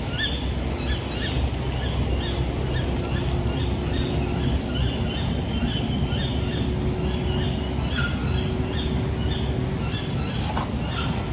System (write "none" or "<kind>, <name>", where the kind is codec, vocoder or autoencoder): none